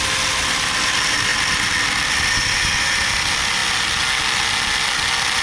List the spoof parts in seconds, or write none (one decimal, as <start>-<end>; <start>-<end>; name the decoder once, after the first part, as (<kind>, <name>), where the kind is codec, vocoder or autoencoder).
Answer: 1.3-2.2 (vocoder, BigVGAN v2)